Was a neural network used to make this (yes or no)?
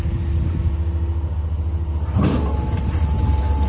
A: no